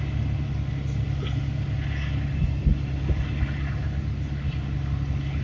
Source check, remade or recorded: recorded